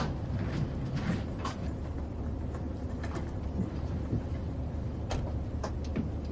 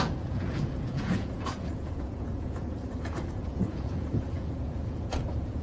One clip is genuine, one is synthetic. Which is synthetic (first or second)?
second